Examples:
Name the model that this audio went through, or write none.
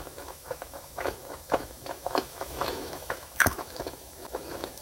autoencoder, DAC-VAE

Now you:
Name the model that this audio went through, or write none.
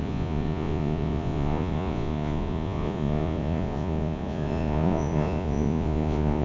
vocoder, Vocos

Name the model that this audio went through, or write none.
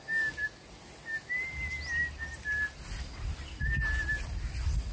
none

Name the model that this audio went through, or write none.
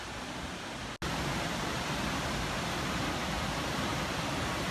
none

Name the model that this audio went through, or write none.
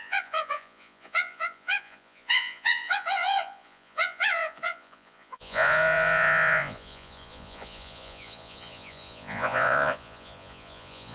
vocoder, Vocos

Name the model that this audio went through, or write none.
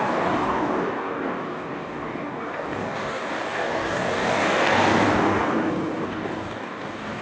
codec, DAC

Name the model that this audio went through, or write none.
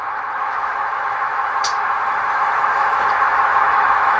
autoencoder, DAC-VAE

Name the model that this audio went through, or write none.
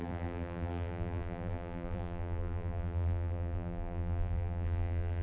vocoder, BigVGAN v2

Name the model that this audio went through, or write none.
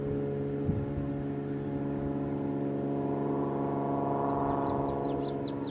none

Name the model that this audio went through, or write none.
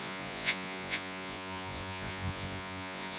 vocoder, Vocos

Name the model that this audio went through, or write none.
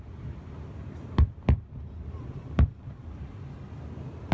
none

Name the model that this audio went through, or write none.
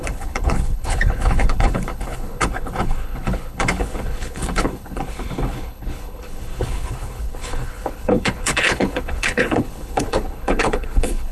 codec, HILCodec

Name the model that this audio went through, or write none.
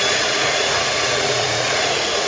vocoder, Vocos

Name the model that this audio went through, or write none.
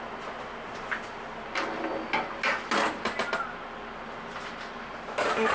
none